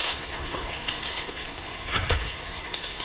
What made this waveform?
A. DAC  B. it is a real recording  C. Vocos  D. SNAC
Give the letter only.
D